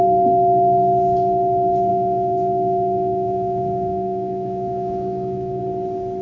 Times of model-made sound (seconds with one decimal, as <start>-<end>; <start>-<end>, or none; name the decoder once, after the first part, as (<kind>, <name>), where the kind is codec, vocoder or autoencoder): 1.9-5.6 (autoencoder, DAC-VAE)